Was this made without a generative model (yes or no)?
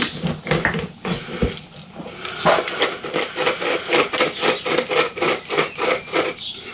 yes